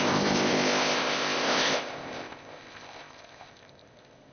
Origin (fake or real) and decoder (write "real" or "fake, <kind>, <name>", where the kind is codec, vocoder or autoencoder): fake, codec, ZipCodec